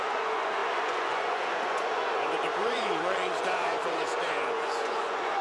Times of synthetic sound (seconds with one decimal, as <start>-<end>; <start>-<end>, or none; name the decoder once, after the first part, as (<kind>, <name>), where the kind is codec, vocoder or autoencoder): 0.0-5.4 (vocoder, Vocos)